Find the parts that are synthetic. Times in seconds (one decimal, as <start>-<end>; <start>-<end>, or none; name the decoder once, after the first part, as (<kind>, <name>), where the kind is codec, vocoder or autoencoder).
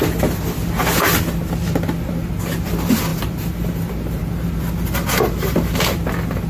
none